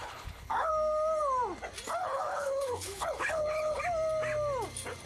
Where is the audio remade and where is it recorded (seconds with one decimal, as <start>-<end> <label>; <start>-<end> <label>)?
0.0-0.7 remade; 0.7-2.0 recorded; 2.0-3.8 remade; 3.8-5.1 recorded